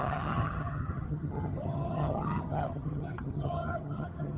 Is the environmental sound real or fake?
fake